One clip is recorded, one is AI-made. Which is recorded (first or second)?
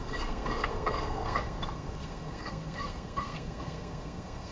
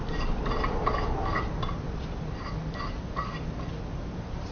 second